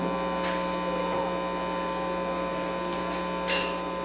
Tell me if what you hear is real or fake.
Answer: real